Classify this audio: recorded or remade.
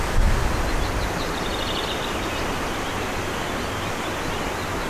recorded